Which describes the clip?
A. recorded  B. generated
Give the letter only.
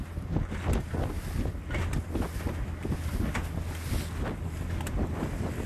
A